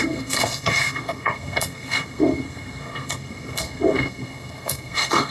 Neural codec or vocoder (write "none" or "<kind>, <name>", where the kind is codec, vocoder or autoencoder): codec, SNAC